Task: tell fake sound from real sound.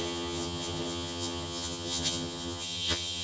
fake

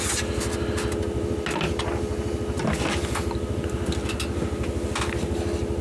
real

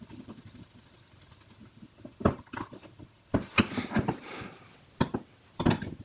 real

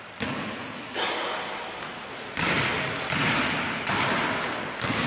real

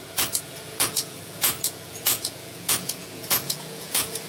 fake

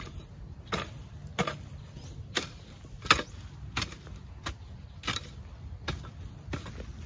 real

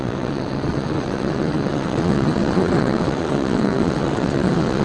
fake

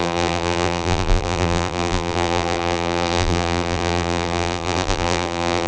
fake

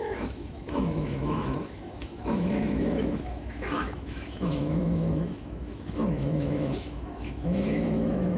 fake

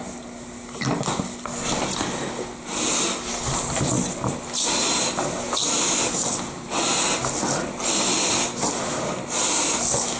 real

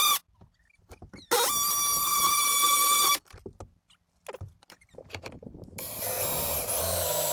real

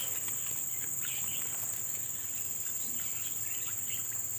real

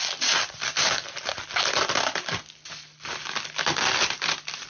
real